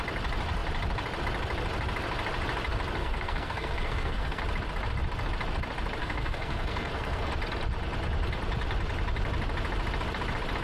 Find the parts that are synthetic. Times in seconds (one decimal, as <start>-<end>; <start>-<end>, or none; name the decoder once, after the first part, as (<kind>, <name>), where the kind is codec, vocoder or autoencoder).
3.0-4.4 (codec, SNAC); 6.0-7.3

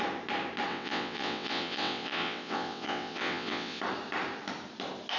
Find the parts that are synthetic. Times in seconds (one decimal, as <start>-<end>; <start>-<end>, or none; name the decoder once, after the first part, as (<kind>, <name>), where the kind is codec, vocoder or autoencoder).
0.7-3.8 (vocoder, WaveNeXt)

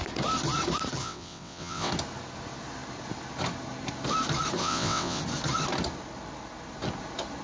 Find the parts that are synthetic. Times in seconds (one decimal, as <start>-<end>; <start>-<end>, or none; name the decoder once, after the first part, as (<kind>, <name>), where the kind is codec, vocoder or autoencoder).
1.0-1.9 (vocoder, WaveNeXt); 4.6-5.2

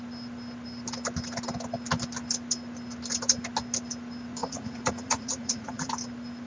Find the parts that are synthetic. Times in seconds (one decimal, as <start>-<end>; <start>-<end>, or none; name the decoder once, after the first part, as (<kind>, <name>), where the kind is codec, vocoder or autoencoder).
4.4-5.9 (vocoder, Vocos)

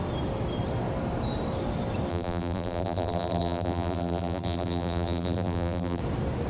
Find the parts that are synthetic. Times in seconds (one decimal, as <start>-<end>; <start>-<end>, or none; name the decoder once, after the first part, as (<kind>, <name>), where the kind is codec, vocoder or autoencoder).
2.1-6.0 (vocoder, BigVGAN v2)

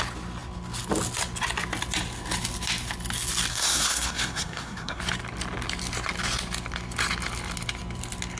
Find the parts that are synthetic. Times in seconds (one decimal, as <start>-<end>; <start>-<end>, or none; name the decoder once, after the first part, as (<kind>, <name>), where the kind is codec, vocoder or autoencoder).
3.5-5.0 (codec, SNAC)

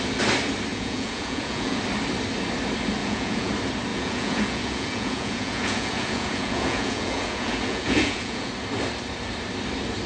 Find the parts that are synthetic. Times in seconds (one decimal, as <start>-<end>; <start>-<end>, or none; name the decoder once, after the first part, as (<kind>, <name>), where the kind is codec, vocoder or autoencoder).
0.7-1.8 (vocoder, Vocos); 3.0-3.5; 3.9-8.5